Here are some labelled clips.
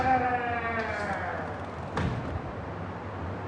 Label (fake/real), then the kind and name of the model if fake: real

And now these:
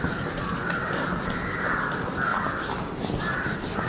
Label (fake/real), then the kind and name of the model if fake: real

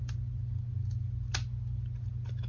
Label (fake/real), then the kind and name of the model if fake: real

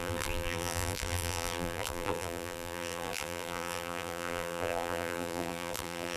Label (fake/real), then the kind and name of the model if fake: fake, vocoder, BigVGAN v2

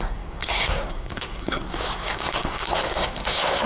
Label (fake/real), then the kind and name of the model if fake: fake, codec, SNAC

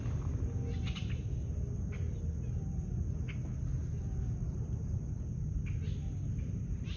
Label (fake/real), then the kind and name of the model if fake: real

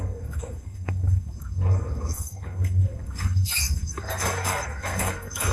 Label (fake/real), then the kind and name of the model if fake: fake, codec, SNAC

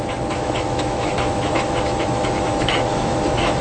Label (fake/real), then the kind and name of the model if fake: fake, autoencoder, DAC-VAE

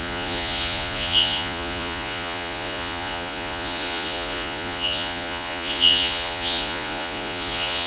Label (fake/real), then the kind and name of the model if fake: fake, vocoder, Vocos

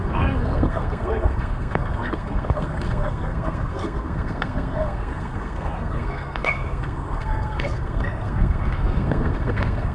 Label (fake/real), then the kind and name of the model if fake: fake, codec, SNAC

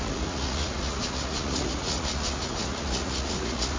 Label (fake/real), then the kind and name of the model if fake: fake, vocoder, Vocos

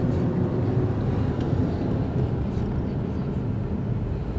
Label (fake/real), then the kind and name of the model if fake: real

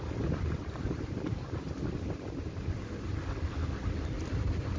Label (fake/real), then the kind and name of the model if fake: fake, vocoder, BigVGAN v2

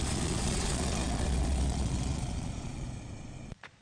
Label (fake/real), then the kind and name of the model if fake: fake, vocoder, Vocos